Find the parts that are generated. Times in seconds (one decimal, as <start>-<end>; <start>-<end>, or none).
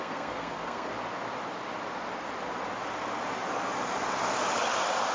0.0-0.9